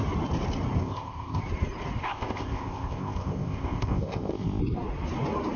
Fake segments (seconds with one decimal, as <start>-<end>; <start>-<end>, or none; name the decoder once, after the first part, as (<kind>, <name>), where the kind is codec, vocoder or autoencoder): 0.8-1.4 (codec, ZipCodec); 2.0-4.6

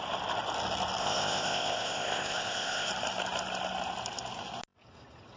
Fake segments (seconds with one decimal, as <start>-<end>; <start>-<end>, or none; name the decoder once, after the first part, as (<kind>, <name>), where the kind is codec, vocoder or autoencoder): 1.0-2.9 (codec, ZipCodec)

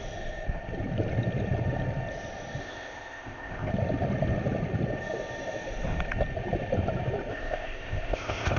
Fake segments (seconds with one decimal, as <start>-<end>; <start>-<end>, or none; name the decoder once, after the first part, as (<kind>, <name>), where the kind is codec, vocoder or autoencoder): 2.6-3.7 (codec, ZipCodec); 7.3-8.6

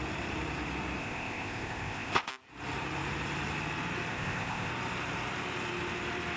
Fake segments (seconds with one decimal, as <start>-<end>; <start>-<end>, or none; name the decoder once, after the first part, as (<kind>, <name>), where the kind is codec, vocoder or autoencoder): 1.0-2.3 (codec, ZipCodec); 4.1-4.7